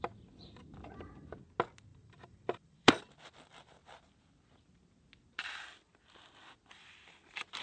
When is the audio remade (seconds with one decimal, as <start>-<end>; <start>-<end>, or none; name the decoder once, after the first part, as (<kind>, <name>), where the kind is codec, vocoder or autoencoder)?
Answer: 1.9-3.0 (vocoder, BigVGAN v2)